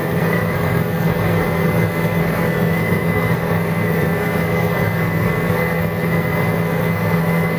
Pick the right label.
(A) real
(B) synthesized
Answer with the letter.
B